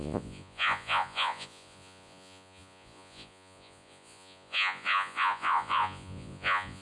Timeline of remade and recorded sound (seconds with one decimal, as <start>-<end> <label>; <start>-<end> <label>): 0.0-6.8 remade

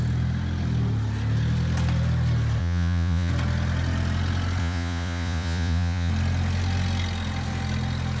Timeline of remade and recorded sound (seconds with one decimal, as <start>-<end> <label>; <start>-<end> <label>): 0.0-2.6 recorded; 2.6-3.3 remade; 3.3-4.6 recorded; 4.6-6.1 remade; 6.1-8.2 recorded

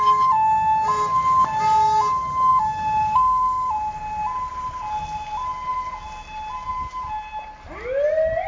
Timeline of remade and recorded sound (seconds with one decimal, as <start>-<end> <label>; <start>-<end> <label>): 0.0-8.5 recorded

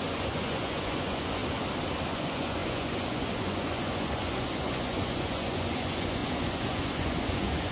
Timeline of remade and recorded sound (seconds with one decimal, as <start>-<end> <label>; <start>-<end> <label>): 0.0-1.4 remade; 1.4-2.1 recorded; 2.1-7.7 remade

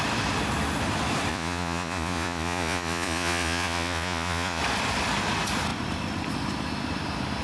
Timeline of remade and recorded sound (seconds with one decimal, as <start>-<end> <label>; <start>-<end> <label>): 0.0-1.3 recorded; 1.3-4.6 remade; 4.6-7.4 recorded

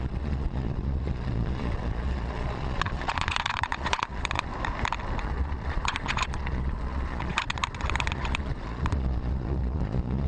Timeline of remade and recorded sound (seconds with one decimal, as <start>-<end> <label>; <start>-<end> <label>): 0.0-4.5 remade; 4.5-5.2 recorded; 5.2-10.3 remade